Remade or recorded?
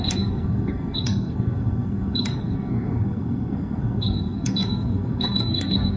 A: remade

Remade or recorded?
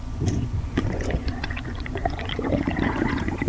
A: remade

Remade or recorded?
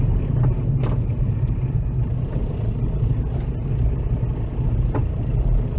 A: recorded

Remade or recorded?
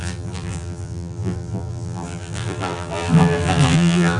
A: remade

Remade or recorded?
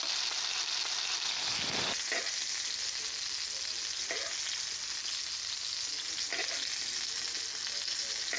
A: recorded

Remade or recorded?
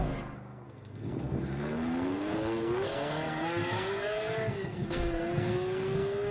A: remade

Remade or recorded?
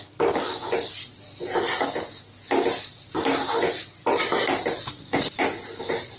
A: recorded